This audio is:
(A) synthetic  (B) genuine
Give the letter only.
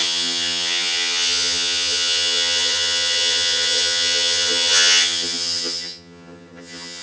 A